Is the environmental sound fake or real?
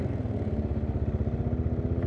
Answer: real